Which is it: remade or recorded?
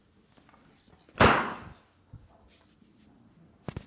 recorded